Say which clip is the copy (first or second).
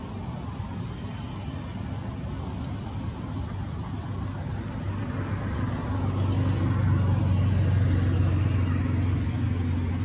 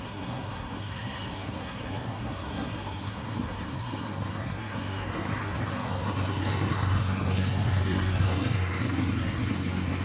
second